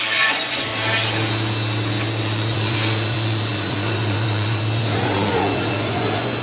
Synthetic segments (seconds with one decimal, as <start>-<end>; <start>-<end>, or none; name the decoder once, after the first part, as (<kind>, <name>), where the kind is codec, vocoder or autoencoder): 0.0-0.7 (vocoder, Vocos); 2.2-6.4